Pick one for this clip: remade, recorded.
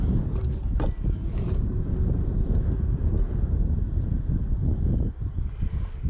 recorded